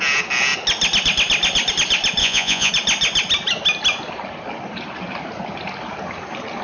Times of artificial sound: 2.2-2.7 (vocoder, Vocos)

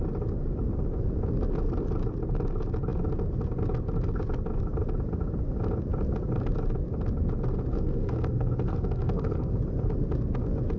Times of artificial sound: 7.7-9.5 (codec, SNAC)

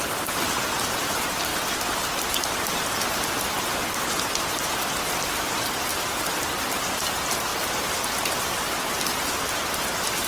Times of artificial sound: 0.0-1.5 (vocoder, BigVGAN v2); 5.2-10.3

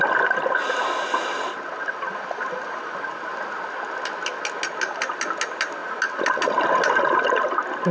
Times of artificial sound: none

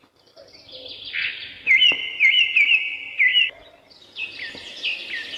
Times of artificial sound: none

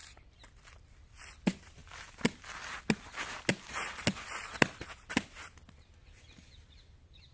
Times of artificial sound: none

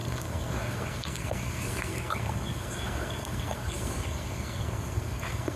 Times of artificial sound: 0.0-5.6 (codec, SNAC)